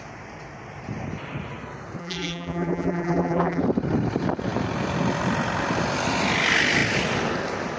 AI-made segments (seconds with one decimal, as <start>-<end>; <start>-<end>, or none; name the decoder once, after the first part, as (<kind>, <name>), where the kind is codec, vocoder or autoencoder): 2.0-3.6 (vocoder, BigVGAN v2)